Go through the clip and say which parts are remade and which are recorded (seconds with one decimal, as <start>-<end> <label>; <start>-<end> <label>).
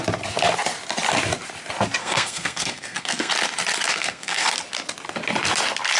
0.0-2.0 recorded; 2.0-3.3 remade; 3.3-3.9 recorded; 3.9-4.5 remade; 4.5-6.0 recorded